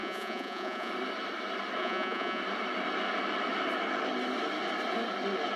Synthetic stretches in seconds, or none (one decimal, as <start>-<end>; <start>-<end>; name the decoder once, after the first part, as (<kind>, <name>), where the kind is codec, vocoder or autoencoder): 0.0-0.9 (vocoder, Vocos); 1.8-2.4